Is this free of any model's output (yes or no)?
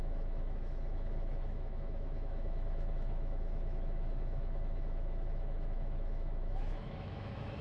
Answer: no